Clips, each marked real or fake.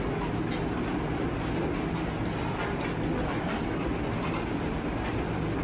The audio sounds real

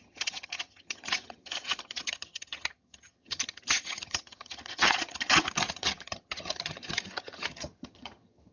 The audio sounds fake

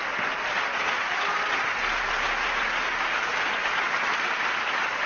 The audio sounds real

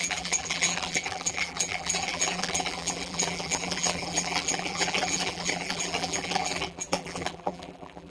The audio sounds fake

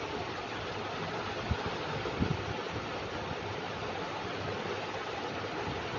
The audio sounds real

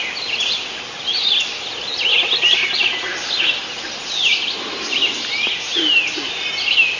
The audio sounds real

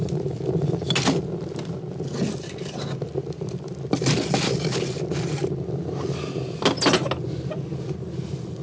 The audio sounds real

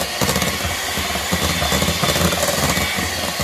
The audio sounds real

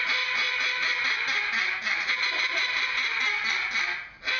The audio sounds real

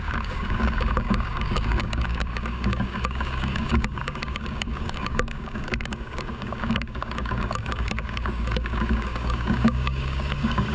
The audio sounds fake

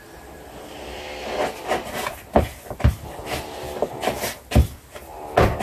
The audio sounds real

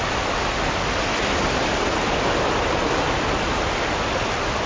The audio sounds real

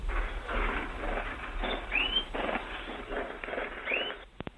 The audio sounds fake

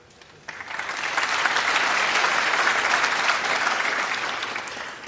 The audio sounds real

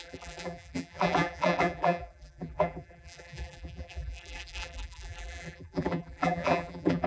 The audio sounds fake